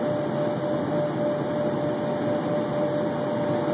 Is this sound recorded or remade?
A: recorded